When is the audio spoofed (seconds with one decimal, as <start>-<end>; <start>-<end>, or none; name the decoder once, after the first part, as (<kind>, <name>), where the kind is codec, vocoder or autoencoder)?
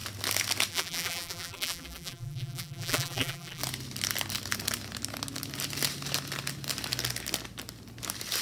0.7-3.6 (vocoder, BigVGAN v2)